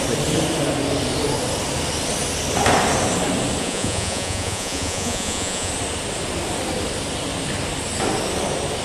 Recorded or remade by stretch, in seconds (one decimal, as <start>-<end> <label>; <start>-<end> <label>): 0.0-3.6 recorded; 3.6-5.7 remade; 5.7-8.8 recorded